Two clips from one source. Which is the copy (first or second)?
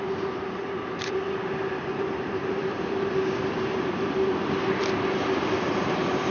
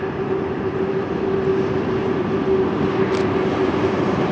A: first